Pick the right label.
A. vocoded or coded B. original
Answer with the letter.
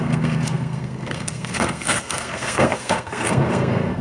A